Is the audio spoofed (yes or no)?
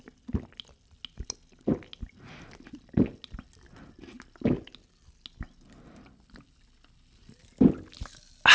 no